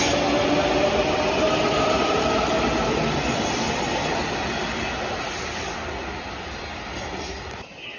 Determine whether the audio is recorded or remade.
recorded